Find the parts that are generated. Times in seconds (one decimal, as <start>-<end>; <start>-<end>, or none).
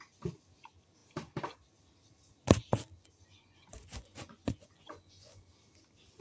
3.3-5.4